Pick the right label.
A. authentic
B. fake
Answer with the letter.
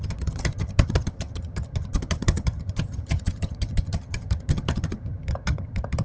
B